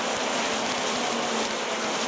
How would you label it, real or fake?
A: real